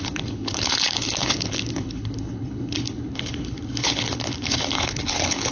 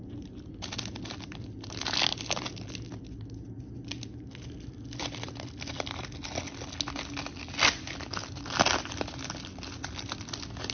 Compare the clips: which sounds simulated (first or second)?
first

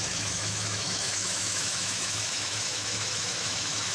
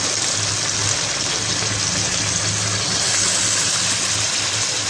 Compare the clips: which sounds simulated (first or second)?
first